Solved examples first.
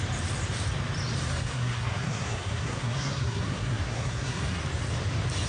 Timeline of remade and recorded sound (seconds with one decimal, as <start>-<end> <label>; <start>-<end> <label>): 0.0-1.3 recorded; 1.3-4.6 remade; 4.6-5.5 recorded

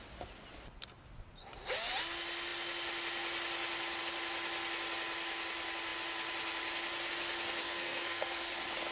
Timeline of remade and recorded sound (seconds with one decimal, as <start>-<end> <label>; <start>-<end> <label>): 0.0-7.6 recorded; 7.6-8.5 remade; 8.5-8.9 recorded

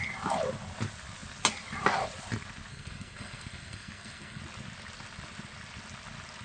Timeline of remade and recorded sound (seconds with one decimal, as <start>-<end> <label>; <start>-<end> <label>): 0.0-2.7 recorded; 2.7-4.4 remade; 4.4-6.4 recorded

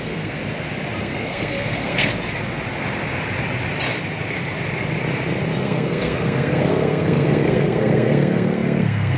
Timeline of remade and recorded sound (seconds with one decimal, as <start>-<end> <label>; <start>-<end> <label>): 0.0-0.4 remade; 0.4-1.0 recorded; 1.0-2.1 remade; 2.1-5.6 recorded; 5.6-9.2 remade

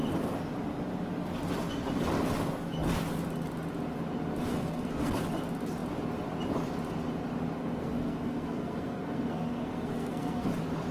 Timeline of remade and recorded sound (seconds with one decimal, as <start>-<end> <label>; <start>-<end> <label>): 0.0-4.5 recorded; 4.5-5.2 remade; 5.2-7.6 recorded; 7.6-10.5 remade; 10.5-10.9 recorded

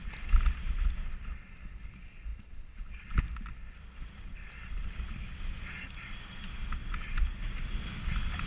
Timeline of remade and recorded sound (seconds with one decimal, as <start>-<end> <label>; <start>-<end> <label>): 0.0-8.5 recorded

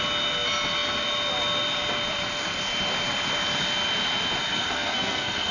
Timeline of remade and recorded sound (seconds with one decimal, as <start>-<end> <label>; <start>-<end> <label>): 0.0-4.4 recorded; 4.4-5.5 remade